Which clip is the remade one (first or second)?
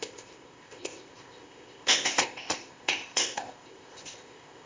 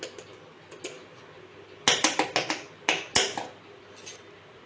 first